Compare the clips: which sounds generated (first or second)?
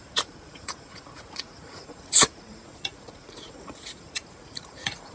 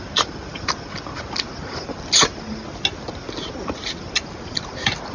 first